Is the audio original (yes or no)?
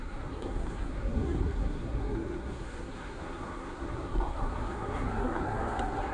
no